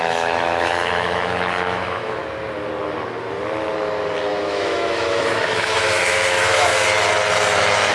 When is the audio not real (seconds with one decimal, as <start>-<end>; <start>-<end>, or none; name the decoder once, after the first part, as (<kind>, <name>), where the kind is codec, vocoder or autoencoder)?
0.0-2.2 (autoencoder, DAC-VAE); 4.3-6.7